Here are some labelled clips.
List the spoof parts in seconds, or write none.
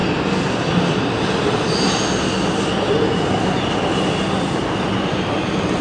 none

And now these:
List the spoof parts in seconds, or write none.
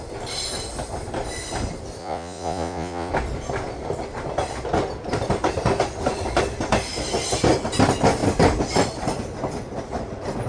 2.0-3.1 (vocoder, Vocos)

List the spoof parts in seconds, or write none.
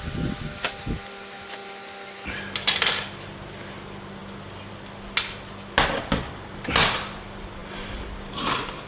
none